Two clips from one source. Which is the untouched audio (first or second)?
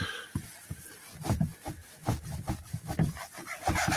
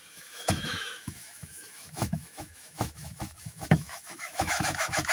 first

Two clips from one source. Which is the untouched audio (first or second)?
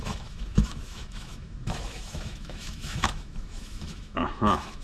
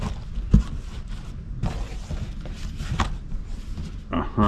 second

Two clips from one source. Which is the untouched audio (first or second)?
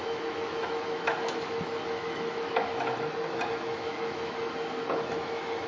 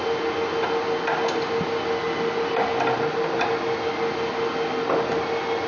second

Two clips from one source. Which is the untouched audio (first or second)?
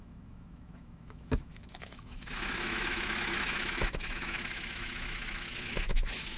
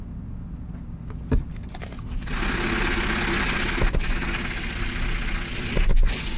second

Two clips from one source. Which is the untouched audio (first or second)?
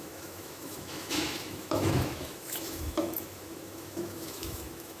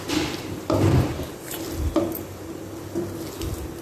second